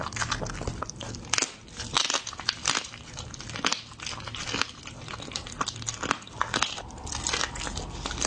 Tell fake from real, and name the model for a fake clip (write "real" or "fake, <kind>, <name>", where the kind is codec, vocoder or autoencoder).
real